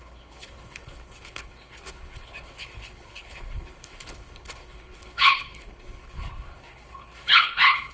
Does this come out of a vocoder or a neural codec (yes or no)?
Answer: yes